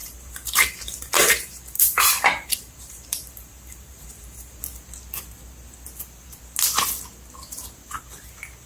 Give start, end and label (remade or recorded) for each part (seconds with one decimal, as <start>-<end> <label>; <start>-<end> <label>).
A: 0.0-4.6 remade; 4.6-8.7 recorded